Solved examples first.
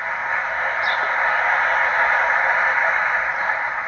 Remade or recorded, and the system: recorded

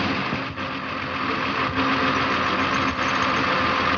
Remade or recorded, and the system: recorded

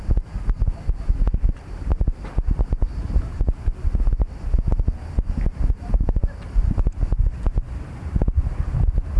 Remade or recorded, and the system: recorded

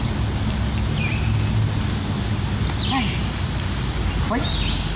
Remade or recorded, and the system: recorded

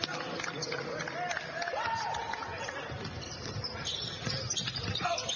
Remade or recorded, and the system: recorded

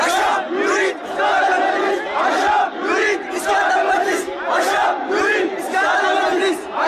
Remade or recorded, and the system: recorded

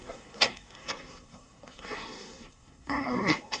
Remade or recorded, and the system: remade, codec, SNAC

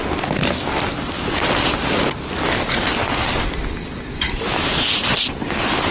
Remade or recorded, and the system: recorded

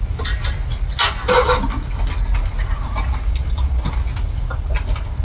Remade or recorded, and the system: recorded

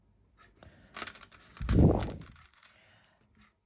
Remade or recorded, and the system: recorded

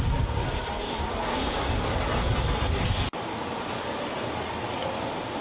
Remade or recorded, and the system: recorded